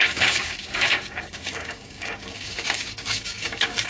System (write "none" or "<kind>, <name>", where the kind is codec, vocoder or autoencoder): codec, DAC